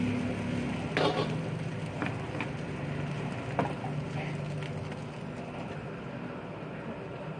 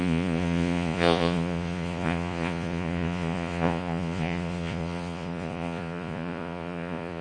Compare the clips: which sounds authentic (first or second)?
first